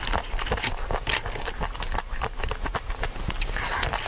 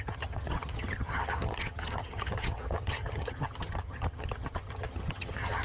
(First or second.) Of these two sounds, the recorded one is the first